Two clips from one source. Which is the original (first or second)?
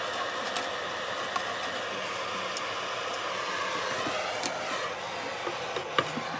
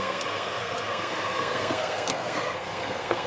first